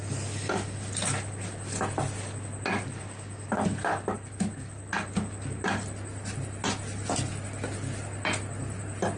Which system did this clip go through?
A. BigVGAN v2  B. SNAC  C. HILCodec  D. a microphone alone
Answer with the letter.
D